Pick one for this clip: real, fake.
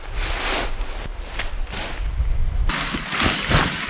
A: real